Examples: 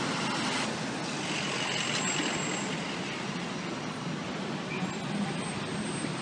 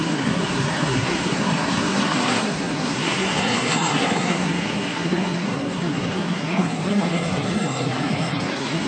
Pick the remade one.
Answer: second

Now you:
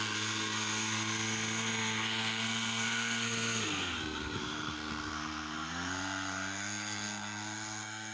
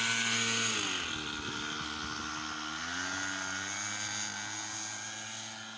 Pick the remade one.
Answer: first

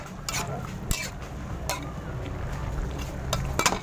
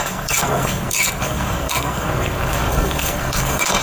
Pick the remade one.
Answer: second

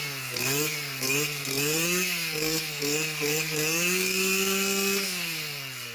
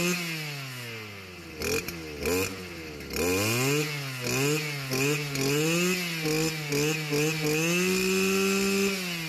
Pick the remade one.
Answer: first